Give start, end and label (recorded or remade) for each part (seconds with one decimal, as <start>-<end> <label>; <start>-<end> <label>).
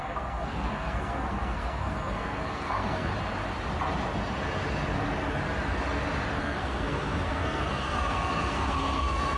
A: 0.0-3.1 remade; 3.1-6.4 recorded; 6.4-9.4 remade